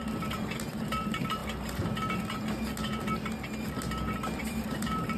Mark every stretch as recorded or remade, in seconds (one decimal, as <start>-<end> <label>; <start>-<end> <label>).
0.0-1.4 remade; 1.4-4.4 recorded; 4.4-5.2 remade